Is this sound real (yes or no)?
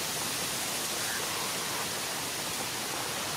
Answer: yes